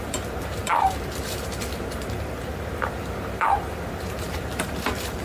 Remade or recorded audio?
remade